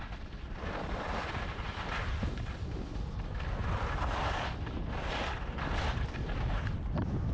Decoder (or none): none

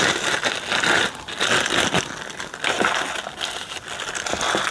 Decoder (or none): none